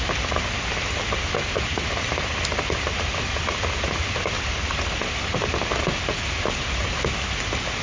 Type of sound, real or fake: real